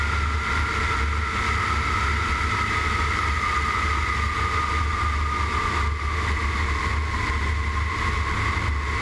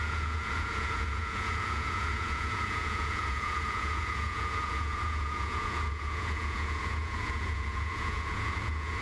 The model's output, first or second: second